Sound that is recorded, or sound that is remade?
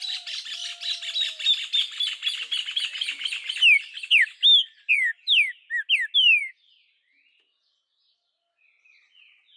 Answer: recorded